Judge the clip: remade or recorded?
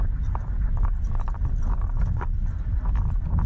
recorded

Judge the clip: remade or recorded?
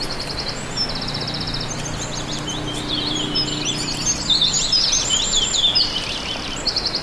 recorded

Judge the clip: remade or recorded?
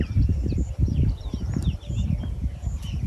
remade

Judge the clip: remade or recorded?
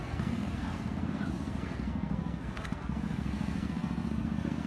remade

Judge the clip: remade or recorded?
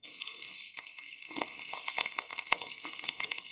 remade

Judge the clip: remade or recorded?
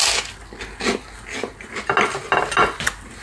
recorded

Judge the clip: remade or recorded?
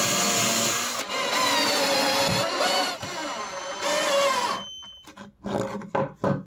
recorded